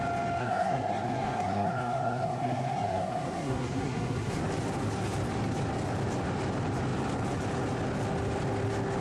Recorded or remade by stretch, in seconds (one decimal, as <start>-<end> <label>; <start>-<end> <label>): 0.0-0.4 recorded; 0.4-4.4 remade; 4.4-9.0 recorded